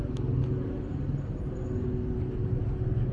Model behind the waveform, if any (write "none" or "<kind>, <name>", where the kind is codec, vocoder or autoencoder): none